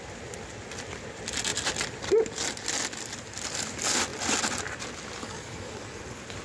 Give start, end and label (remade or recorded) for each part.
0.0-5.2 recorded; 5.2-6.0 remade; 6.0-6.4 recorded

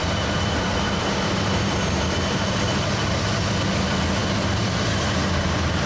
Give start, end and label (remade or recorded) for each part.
0.0-3.5 remade; 3.5-4.2 recorded; 4.2-5.9 remade

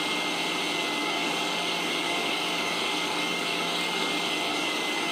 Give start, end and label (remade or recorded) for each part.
0.0-1.0 recorded; 1.0-4.1 remade; 4.1-4.5 recorded; 4.5-5.1 remade